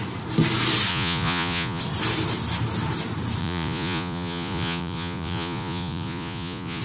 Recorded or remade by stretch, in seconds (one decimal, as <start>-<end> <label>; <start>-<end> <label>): 0.0-0.9 recorded; 0.9-1.8 remade; 1.8-3.4 recorded; 3.4-6.8 remade

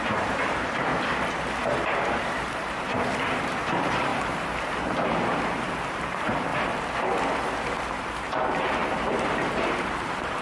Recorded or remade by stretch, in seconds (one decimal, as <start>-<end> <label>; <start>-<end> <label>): 0.0-0.9 remade; 0.9-1.8 recorded; 1.8-6.5 remade; 6.5-7.9 recorded; 7.9-10.4 remade